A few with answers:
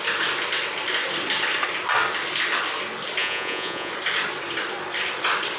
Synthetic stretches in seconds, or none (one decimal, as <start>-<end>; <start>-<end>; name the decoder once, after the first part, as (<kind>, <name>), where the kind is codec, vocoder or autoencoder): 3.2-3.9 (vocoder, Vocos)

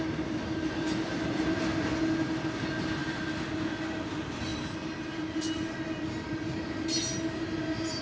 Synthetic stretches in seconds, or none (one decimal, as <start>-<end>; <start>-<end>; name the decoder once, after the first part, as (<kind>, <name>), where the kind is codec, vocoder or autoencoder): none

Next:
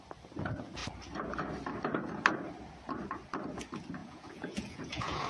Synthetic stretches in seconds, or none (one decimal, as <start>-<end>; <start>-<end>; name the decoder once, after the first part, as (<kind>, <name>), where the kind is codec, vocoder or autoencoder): 4.0-5.3 (vocoder, Vocos)